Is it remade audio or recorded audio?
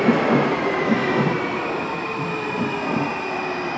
recorded